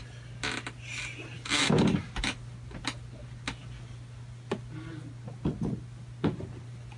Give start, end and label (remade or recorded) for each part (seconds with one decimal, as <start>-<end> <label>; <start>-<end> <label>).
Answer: 0.0-7.0 recorded